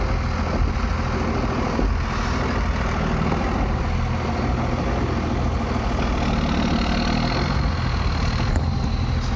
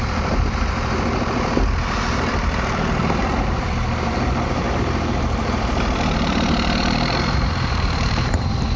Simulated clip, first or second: second